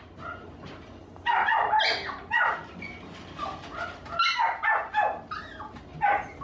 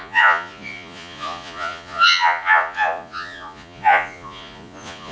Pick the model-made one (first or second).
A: second